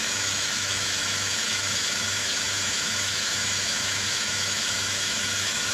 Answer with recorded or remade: remade